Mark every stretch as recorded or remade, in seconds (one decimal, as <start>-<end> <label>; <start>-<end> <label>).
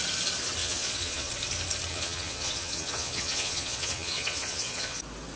0.0-0.6 recorded; 0.6-1.3 remade; 1.3-1.9 recorded; 1.9-5.0 remade; 5.0-5.4 recorded